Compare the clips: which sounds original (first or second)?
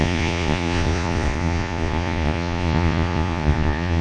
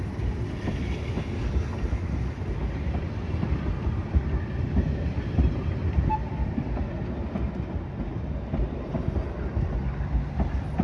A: second